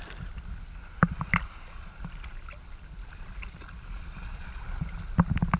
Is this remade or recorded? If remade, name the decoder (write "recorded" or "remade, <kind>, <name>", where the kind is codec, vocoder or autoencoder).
recorded